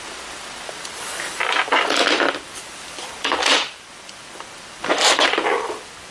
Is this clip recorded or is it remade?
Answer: remade